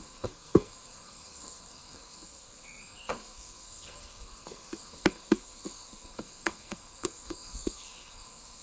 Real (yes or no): no